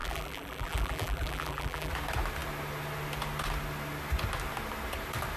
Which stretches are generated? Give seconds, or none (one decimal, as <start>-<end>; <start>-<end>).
0.0-1.9